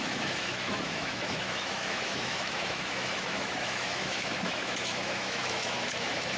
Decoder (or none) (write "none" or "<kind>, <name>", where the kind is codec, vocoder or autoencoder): autoencoder, DAC-VAE